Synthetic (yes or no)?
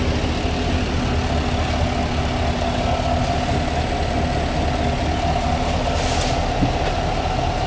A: no